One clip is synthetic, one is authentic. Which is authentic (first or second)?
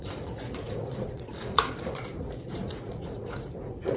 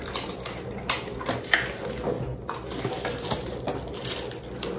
second